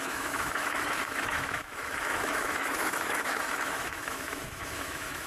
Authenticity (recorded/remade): remade